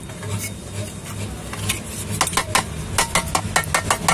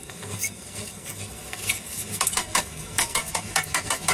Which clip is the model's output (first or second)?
second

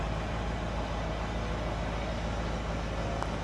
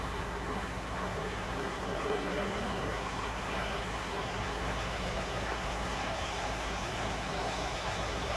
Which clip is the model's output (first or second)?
second